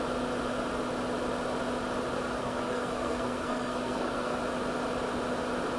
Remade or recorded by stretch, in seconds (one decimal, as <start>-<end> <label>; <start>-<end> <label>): 0.0-2.4 recorded; 2.4-4.4 remade; 4.4-5.8 recorded